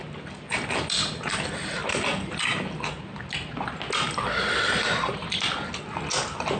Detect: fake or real real